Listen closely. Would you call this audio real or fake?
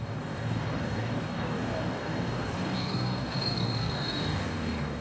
fake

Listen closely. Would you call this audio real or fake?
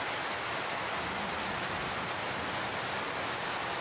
real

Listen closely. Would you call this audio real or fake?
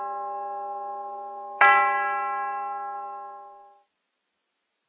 real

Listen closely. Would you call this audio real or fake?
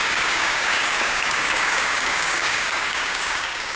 fake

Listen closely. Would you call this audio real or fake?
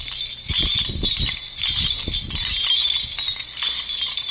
real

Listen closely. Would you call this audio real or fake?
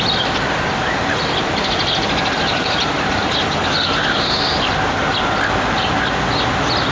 real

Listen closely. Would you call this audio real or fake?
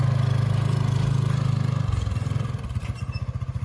real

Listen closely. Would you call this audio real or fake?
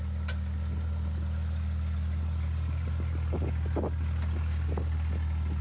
real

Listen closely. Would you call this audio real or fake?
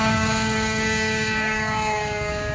fake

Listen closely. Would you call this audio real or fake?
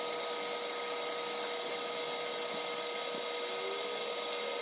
real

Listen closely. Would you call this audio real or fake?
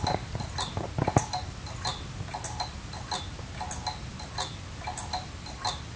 real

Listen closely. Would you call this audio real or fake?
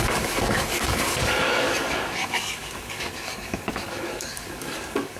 fake